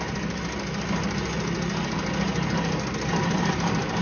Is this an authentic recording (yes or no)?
yes